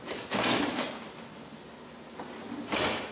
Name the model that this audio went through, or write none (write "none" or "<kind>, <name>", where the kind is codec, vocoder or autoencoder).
none